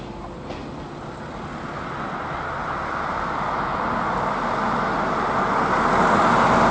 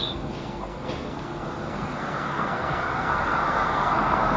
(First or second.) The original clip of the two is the first